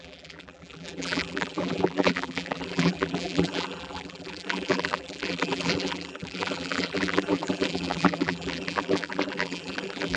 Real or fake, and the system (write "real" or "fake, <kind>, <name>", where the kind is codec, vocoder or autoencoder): fake, vocoder, BigVGAN v2